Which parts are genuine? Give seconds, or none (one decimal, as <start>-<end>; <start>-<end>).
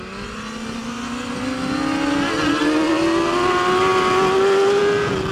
0.0-5.3